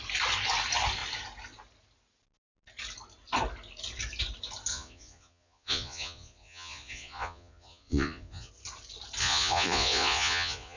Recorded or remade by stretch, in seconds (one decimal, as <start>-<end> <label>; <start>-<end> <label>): 0.0-4.7 recorded; 4.7-8.5 remade; 8.5-9.2 recorded; 9.2-10.8 remade